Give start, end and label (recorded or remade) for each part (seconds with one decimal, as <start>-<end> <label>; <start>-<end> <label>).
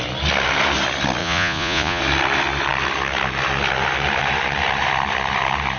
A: 0.0-1.2 recorded; 1.2-2.0 remade; 2.0-5.8 recorded